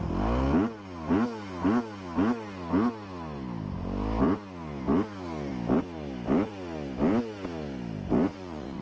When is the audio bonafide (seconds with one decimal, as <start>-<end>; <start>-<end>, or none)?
0.0-8.3